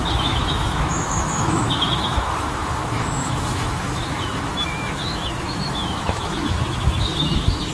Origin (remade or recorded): remade